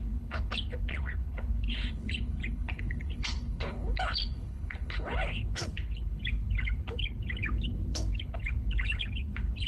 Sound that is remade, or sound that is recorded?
remade